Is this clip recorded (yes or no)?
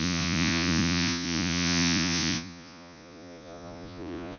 no